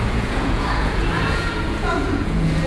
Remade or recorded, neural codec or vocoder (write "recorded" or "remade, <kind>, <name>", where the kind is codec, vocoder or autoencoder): remade, vocoder, Vocos